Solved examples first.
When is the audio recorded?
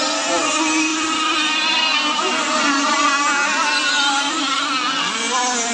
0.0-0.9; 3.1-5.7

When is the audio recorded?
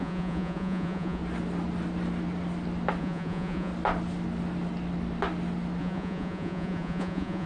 1.2-3.0; 3.7-5.8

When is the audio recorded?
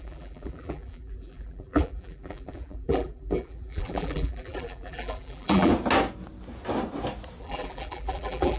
5.7-7.4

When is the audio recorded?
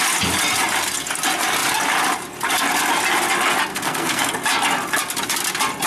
0.0-3.7; 4.3-5.9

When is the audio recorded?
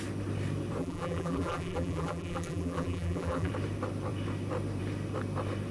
0.0-0.8; 3.5-5.7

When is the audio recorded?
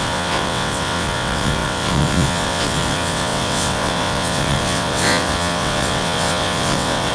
none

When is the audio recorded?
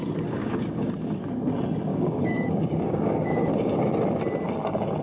0.0-0.4; 1.2-1.9; 3.8-5.0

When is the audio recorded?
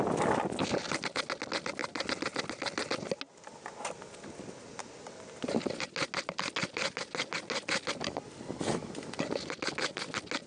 0.0-10.5